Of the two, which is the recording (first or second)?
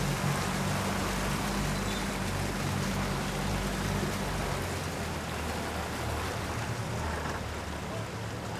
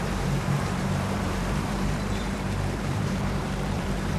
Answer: first